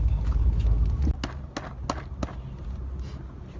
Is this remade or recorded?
recorded